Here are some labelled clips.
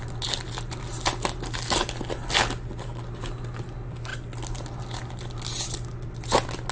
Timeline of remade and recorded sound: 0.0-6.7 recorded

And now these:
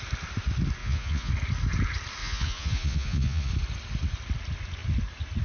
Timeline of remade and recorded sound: 0.0-0.8 recorded; 0.8-1.3 remade; 1.3-2.2 recorded; 2.2-3.5 remade; 3.5-5.4 recorded

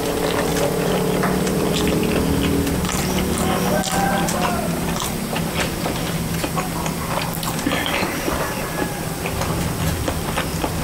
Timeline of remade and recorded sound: 0.0-10.8 recorded

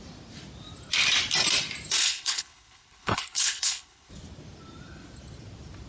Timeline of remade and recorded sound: 0.0-2.0 recorded; 2.0-4.1 remade; 4.1-5.9 recorded

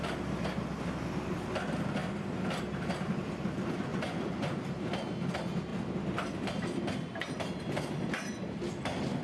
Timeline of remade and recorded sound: 0.0-3.9 recorded; 3.9-4.5 remade; 4.5-9.2 recorded

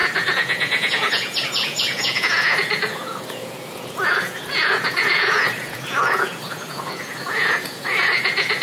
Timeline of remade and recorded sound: 0.0-8.6 remade

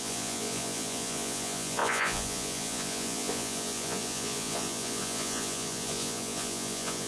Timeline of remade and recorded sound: 0.0-7.1 remade